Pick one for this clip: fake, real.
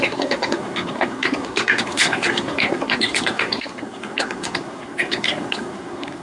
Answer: fake